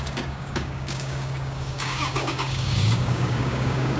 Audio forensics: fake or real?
fake